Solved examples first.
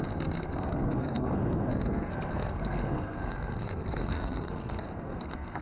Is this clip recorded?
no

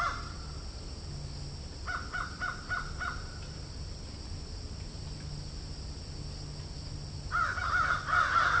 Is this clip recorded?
yes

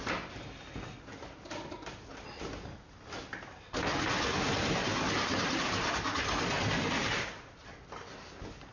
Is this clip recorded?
yes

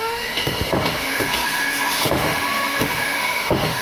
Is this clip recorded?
no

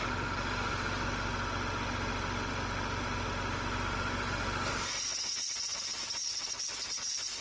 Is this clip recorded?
no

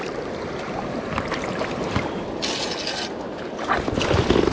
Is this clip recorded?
yes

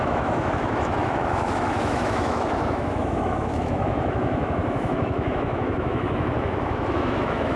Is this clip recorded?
no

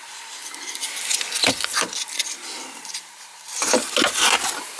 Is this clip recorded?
yes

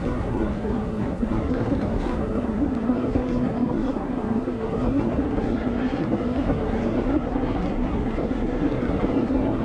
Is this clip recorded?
no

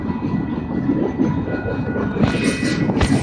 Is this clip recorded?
yes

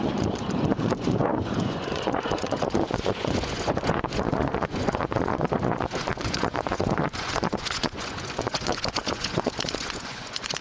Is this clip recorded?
no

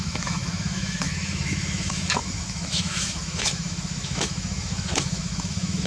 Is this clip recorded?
no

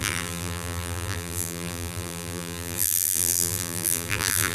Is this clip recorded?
no